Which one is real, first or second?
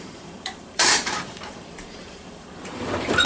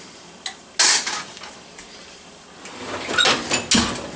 second